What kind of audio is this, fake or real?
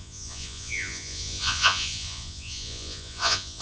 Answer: fake